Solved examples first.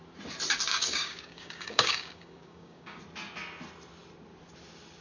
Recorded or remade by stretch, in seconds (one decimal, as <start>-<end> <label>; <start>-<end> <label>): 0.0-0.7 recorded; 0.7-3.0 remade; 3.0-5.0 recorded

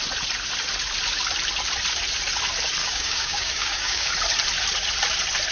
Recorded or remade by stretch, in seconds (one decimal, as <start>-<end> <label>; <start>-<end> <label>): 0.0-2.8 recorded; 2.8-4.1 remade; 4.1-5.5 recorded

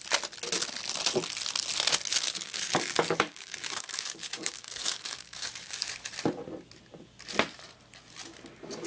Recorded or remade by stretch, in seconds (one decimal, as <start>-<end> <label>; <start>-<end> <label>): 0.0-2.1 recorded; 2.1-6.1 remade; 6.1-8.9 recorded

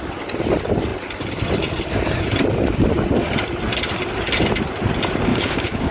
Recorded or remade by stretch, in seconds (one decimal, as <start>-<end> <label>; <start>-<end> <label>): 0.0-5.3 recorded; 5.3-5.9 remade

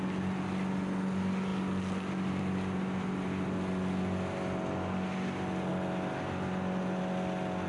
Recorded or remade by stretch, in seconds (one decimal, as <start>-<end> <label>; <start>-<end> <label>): 0.0-7.7 recorded

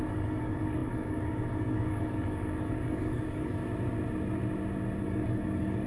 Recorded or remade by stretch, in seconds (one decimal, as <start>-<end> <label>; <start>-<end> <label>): 0.0-3.6 remade; 3.6-5.0 recorded; 5.0-5.9 remade

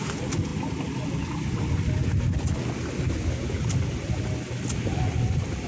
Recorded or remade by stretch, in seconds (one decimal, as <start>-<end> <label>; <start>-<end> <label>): 0.0-5.7 recorded